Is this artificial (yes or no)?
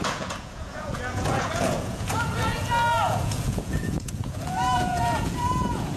yes